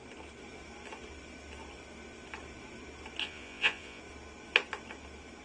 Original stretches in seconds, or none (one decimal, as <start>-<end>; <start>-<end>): 0.0-3.2; 4.0-5.4